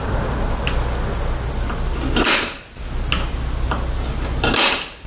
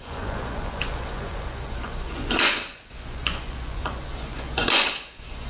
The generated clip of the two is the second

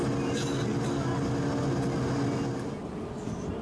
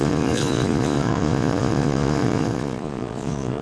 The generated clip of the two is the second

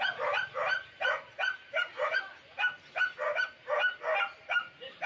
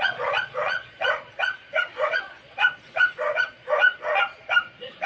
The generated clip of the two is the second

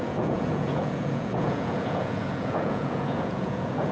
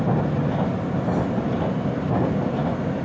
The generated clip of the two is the first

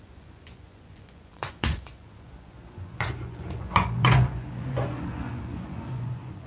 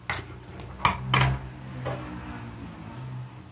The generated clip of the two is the first